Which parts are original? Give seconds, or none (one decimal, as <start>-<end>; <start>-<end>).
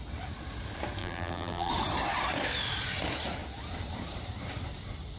0.0-1.0; 1.7-5.2